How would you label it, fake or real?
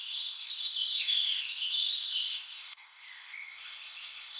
fake